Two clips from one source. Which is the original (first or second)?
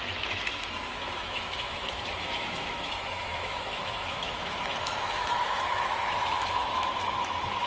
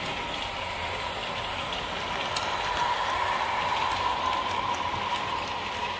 second